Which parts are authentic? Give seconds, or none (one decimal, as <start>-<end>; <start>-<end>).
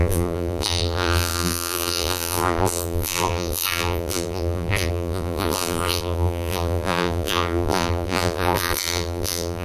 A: none